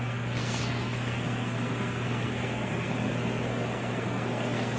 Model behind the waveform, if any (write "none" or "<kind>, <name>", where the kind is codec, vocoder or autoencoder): codec, SNAC